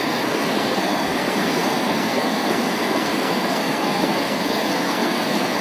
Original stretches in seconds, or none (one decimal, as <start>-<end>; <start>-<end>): none